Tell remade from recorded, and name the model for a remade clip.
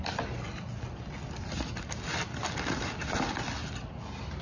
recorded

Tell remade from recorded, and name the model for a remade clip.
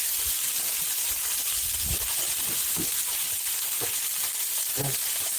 recorded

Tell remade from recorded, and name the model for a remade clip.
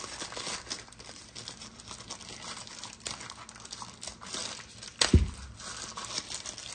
recorded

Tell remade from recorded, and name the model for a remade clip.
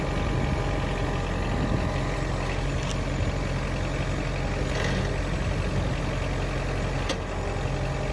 recorded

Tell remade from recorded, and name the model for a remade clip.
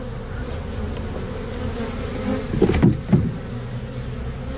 recorded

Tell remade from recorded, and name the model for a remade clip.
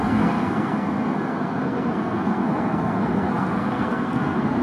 remade, codec, SNAC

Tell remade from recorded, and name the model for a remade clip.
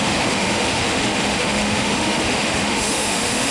remade, autoencoder, DAC-VAE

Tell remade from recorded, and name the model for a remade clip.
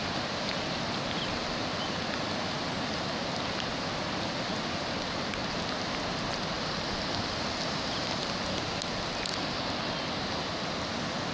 recorded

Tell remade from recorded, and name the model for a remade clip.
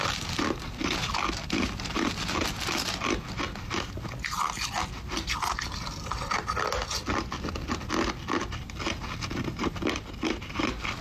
recorded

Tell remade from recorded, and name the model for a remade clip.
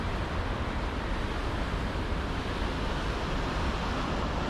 recorded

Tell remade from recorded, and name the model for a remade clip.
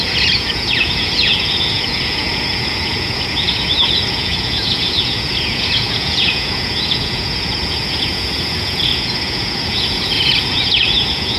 remade, vocoder, Vocos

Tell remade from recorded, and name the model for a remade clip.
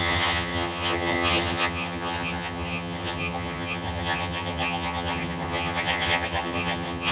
remade, vocoder, HiFi-GAN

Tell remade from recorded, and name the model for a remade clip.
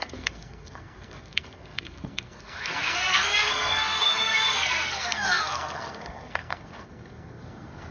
remade, codec, SNAC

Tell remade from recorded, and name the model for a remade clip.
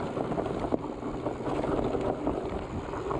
recorded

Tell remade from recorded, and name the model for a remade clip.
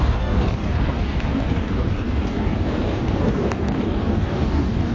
remade, codec, DAC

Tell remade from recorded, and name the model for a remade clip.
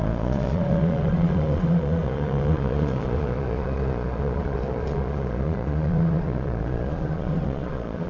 remade, vocoder, Vocos